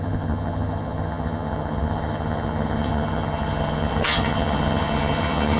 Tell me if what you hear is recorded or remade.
remade